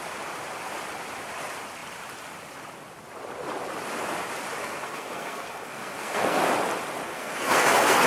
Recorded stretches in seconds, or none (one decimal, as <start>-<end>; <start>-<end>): 0.0-4.6; 6.4-7.1